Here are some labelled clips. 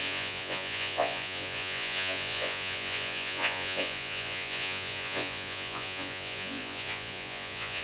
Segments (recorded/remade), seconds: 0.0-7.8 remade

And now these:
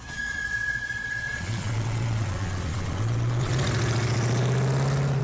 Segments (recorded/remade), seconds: 0.0-3.5 remade; 3.5-5.2 recorded

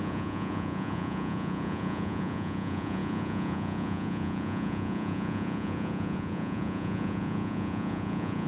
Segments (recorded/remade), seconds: 0.0-8.5 remade

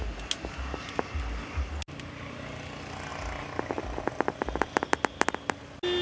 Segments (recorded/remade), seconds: 0.0-6.0 recorded

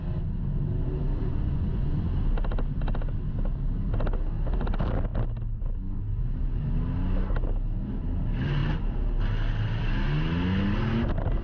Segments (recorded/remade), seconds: 0.0-1.3 recorded; 1.3-1.9 remade; 1.9-11.4 recorded

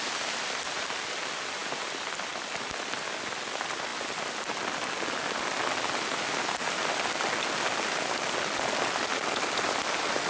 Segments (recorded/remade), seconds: 0.0-10.3 recorded

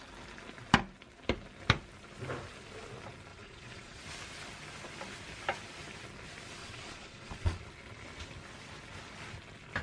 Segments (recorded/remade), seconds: 0.0-3.3 recorded; 3.3-4.0 remade; 4.0-6.6 recorded; 6.6-7.6 remade; 7.6-9.8 recorded

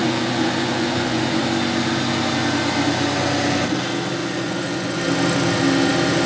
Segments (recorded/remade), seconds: 0.0-1.4 remade; 1.4-4.2 recorded; 4.2-5.0 remade; 5.0-6.3 recorded